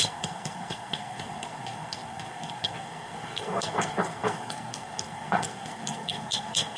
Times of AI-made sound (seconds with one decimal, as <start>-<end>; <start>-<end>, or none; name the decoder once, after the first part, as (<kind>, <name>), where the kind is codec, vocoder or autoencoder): 0.0-6.8 (codec, SNAC)